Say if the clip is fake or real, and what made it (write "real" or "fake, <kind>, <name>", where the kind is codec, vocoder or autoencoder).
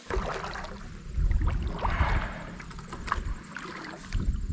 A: real